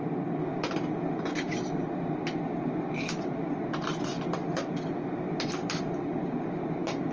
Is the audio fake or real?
real